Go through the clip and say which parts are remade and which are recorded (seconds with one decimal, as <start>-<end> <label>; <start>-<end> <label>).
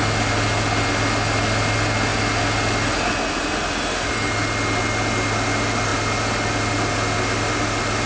0.0-8.1 recorded